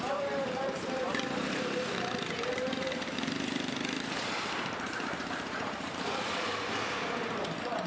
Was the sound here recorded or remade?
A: remade